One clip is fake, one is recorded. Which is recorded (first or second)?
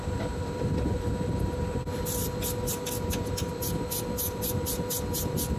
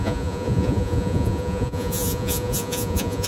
first